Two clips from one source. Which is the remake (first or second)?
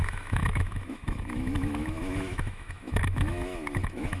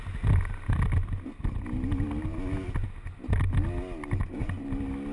first